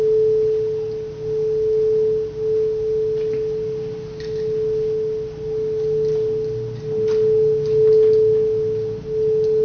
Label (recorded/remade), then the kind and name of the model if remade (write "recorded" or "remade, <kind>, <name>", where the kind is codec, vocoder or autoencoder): recorded